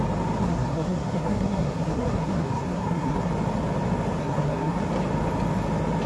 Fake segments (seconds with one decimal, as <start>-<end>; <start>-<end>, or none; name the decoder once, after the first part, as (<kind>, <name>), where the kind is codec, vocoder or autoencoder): 0.4-3.3 (codec, SNAC); 4.2-4.8

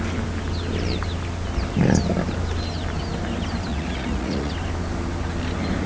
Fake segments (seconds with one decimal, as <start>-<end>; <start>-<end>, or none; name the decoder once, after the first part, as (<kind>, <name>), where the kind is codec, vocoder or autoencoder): 3.7-4.5 (vocoder, Vocos)